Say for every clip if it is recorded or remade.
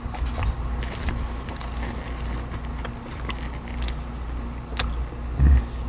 recorded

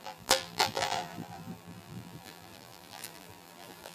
remade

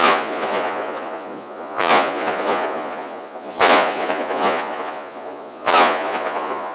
remade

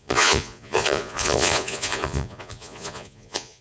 remade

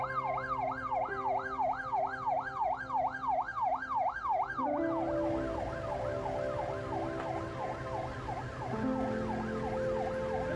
recorded